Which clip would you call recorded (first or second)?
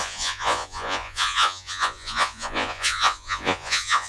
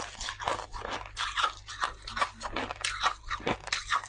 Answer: second